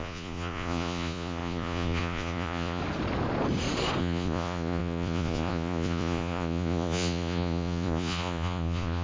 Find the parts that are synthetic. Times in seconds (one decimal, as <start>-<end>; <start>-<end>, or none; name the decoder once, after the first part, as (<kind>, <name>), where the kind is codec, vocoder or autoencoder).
0.0-2.8 (vocoder, Vocos); 4.0-9.0